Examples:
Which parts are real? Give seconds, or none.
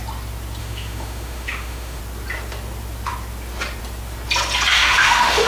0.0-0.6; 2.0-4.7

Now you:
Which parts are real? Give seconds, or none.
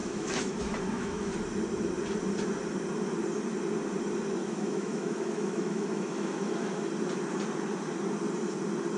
1.3-4.4; 6.9-9.0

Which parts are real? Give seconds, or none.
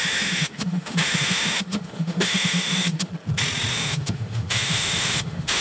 3.1-3.7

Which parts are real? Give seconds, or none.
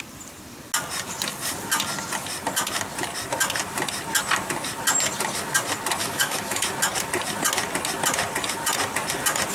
0.0-6.0; 6.6-9.5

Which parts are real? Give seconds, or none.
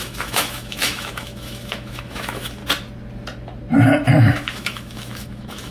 2.6-4.2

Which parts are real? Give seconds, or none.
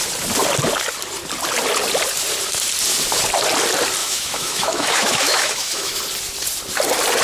0.0-4.0; 6.0-7.2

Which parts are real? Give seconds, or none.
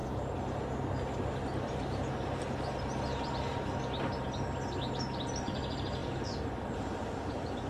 0.0-7.7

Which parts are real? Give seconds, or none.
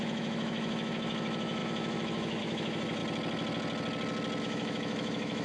3.0-4.4